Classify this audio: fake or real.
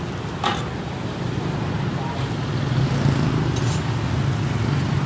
real